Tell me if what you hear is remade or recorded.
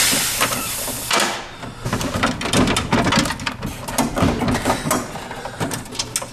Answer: recorded